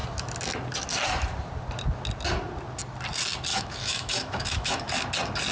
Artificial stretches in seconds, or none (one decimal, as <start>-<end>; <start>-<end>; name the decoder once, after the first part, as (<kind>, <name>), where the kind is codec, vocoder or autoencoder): 3.5-4.9 (autoencoder, DAC-VAE)